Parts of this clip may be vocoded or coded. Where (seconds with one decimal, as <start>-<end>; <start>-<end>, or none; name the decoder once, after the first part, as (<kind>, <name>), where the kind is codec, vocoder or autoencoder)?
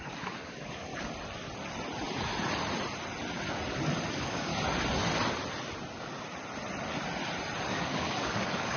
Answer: 0.0-0.9 (codec, DAC); 4.1-4.5; 7.7-8.8